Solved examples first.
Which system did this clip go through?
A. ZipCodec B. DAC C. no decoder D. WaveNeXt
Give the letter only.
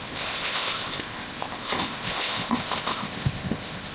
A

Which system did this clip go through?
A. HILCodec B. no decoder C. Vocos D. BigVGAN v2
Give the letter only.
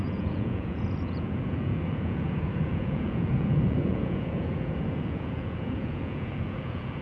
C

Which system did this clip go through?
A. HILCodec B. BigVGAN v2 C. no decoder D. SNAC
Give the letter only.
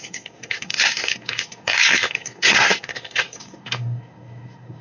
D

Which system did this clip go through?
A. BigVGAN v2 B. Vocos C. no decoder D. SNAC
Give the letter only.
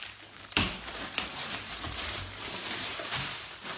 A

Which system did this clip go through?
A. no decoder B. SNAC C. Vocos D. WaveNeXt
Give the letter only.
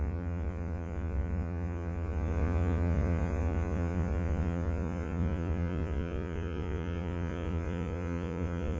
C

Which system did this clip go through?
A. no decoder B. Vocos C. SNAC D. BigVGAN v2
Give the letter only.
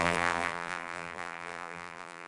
D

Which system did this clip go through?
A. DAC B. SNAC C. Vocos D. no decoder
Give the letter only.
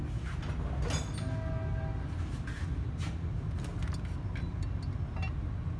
D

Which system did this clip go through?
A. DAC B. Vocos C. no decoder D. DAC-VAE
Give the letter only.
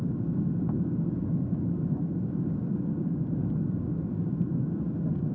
A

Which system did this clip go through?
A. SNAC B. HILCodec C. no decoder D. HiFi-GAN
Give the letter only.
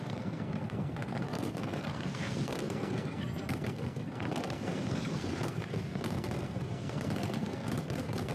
A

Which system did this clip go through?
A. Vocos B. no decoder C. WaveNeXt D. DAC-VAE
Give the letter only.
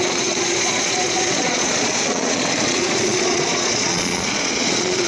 A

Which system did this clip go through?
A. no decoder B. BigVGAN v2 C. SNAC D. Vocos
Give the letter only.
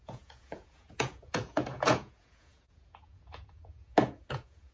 D